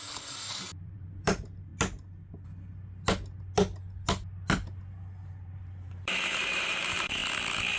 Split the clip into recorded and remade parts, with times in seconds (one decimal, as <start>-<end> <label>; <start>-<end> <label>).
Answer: 0.0-1.7 remade; 1.7-5.3 recorded; 5.3-7.2 remade; 7.2-7.8 recorded